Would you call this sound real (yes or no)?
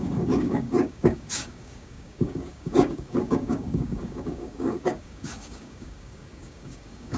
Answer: no